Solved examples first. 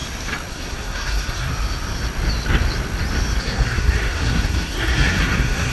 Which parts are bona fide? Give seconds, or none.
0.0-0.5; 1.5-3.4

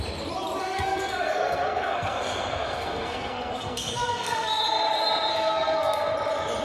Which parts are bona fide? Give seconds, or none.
0.0-0.6; 4.6-5.3; 6.1-6.6

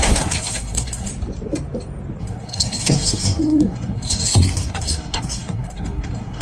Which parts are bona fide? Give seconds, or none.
1.1-2.2

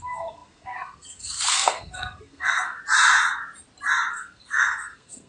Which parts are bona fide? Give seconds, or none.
2.8-4.1

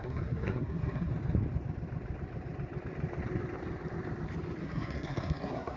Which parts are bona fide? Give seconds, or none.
1.1-4.6

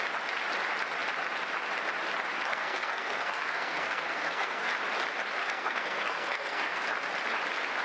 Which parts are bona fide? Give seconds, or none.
0.0-2.5; 4.7-5.4; 6.9-7.8

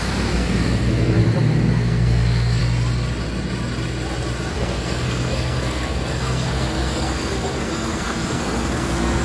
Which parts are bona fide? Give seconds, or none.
1.2-1.7; 2.6-4.5